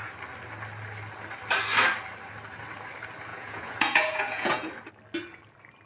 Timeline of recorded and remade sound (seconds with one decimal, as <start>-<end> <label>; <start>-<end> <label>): 0.0-3.3 recorded; 3.3-4.7 remade; 4.7-5.9 recorded